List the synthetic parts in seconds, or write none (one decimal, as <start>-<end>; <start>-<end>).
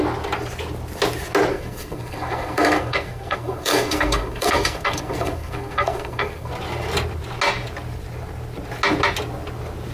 1.5-6.5